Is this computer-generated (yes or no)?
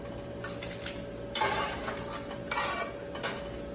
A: no